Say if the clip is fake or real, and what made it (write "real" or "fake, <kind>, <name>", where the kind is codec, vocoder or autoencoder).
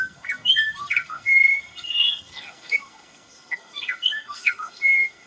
fake, codec, SNAC